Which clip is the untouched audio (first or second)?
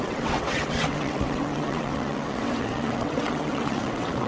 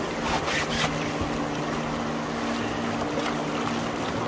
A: second